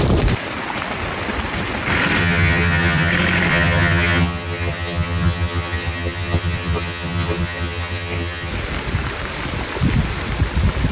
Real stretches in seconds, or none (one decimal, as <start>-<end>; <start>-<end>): 0.0-2.2; 3.1-3.5; 8.5-10.9